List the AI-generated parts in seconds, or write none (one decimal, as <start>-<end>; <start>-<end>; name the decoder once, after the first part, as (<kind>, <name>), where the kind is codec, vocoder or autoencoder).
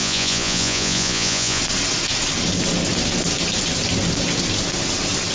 0.0-1.6 (vocoder, Vocos)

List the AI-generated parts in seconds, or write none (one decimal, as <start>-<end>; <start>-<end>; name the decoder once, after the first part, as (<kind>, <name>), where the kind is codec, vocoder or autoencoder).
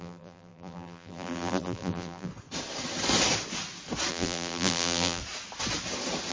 0.0-2.3 (vocoder, BigVGAN v2); 4.1-5.2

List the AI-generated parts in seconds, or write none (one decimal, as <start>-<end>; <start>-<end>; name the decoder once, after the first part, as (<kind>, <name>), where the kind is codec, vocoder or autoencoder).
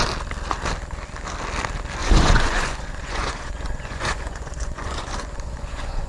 2.0-6.1 (vocoder, Vocos)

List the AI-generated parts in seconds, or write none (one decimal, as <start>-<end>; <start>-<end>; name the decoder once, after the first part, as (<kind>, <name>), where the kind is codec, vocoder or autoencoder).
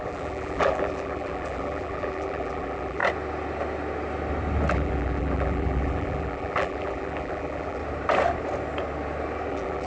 0.0-3.0 (vocoder, BigVGAN v2); 4.7-7.8; 9.5-9.9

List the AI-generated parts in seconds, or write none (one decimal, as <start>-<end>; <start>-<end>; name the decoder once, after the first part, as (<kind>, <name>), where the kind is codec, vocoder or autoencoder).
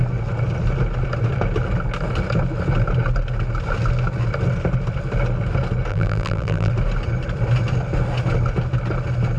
5.9-6.7 (vocoder, BigVGAN v2)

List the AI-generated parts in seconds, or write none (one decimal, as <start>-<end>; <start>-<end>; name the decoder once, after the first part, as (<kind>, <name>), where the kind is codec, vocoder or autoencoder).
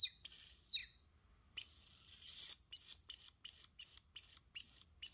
none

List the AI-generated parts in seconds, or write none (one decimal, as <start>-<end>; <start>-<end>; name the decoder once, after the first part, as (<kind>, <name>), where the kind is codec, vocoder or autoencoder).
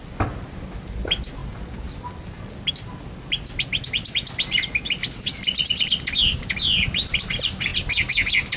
none